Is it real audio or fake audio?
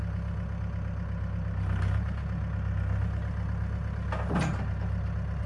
real